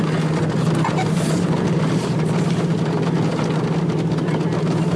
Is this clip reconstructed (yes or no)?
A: no